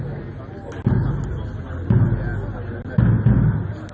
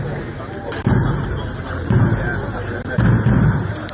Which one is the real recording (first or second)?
first